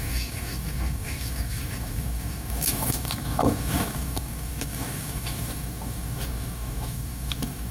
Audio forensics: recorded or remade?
remade